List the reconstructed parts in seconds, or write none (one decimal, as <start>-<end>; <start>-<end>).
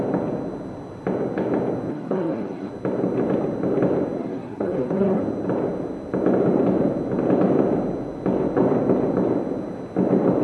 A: 1.9-2.7; 4.2-5.2